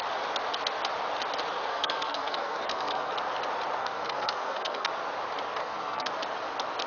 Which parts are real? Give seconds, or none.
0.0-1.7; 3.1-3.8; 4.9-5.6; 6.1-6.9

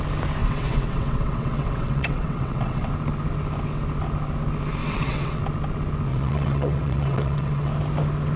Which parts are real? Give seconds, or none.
0.0-0.4; 2.9-4.8; 5.4-6.1; 7.7-8.4

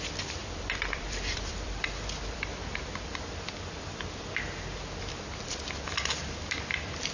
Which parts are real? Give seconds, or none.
0.0-0.4; 3.1-5.9; 6.6-7.1

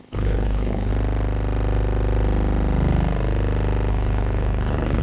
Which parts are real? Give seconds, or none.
0.9-3.9